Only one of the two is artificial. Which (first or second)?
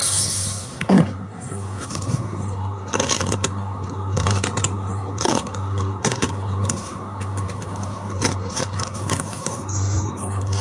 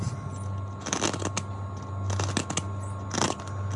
first